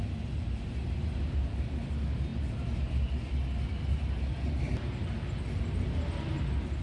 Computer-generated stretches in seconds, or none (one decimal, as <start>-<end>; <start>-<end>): none